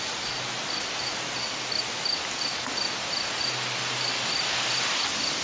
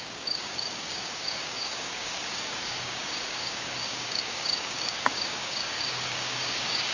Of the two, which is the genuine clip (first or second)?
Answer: first